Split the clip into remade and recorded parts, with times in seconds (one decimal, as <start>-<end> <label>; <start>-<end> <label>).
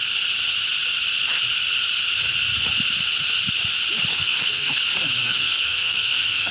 0.0-4.1 recorded; 4.1-4.8 remade; 4.8-5.2 recorded; 5.2-6.5 remade